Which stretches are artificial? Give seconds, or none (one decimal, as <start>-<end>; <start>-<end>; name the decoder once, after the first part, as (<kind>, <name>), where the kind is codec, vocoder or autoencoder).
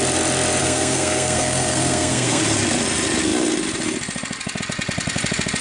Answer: 0.6-2.4 (codec, SNAC)